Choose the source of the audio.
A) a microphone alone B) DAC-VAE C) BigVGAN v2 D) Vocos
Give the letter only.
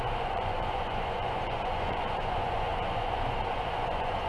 D